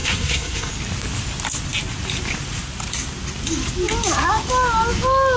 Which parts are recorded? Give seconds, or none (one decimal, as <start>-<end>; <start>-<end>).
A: 0.7-5.4